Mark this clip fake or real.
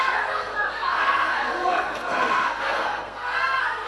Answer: fake